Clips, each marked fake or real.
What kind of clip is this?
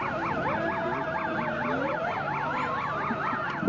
real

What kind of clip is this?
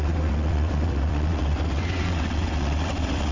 fake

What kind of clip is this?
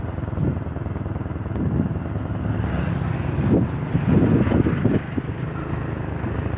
real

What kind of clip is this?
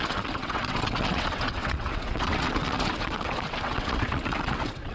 fake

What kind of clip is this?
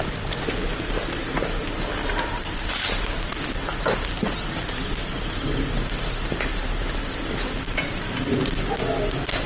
real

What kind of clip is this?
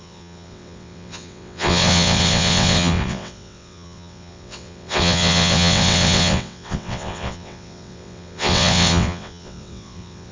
fake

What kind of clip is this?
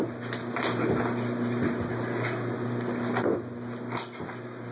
real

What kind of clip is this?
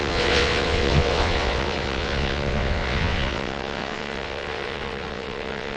fake